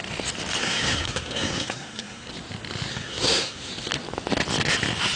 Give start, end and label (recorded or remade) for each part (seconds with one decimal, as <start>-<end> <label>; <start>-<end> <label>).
0.0-0.6 recorded; 0.6-2.3 remade; 2.3-2.9 recorded; 2.9-3.7 remade; 3.7-5.2 recorded